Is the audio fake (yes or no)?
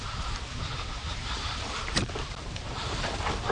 yes